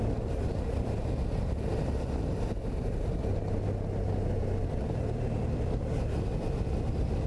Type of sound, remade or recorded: recorded